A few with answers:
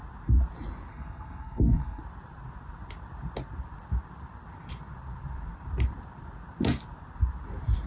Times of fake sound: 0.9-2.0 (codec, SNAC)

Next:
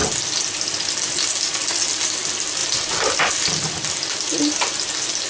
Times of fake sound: none

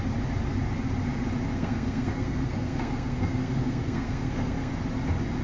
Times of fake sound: 1.5-4.7 (codec, SNAC)

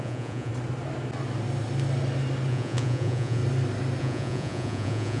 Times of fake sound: 0.0-0.5 (vocoder, Vocos); 2.5-3.4; 4.0-5.2

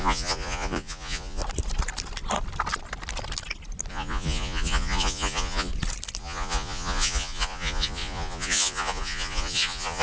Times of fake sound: 0.0-1.4 (vocoder, Vocos); 3.9-5.7; 6.2-10.0

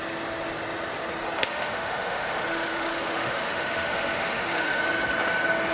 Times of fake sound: 1.4-4.8 (autoencoder, DAC-VAE)

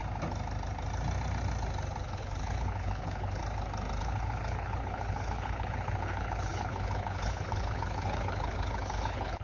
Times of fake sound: 2.0-3.4 (codec, HILCodec); 4.0-9.4